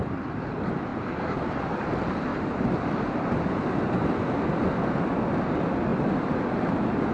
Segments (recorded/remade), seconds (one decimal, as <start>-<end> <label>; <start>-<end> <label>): 0.0-0.9 recorded; 0.9-1.6 remade; 1.6-2.3 recorded; 2.3-3.8 remade; 3.8-5.9 recorded; 5.9-7.1 remade